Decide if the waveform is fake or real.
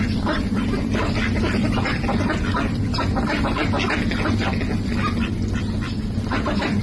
real